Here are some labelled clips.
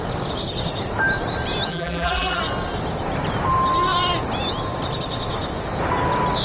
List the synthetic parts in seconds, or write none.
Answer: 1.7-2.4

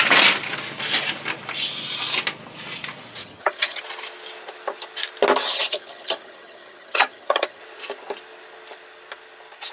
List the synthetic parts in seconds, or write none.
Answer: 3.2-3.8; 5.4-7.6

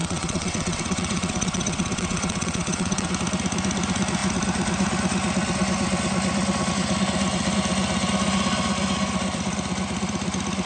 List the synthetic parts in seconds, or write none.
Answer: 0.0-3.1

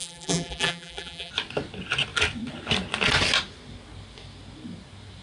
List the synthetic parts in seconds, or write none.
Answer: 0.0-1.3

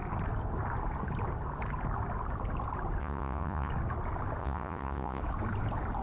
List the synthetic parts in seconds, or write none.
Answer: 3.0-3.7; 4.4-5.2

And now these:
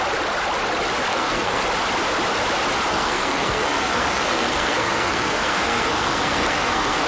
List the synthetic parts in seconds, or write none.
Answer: 1.1-1.6; 2.9-7.1

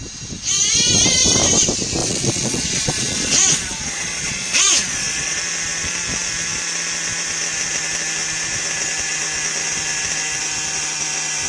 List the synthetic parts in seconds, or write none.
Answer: 2.0-5.4